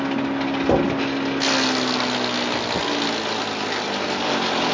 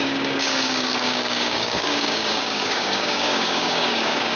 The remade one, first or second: second